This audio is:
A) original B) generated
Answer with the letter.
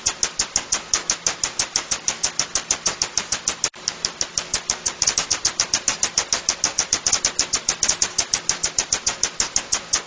A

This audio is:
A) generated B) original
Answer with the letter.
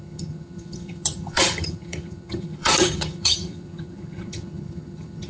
A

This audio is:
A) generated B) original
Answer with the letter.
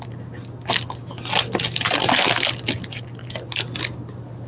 B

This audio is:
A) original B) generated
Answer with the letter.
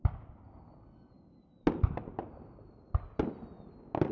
A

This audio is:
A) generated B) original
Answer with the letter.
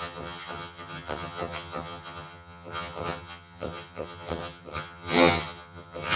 A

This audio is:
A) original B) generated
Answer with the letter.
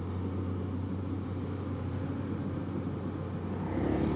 A